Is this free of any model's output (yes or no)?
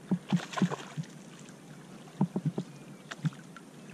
yes